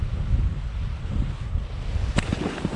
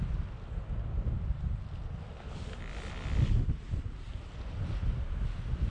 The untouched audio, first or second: second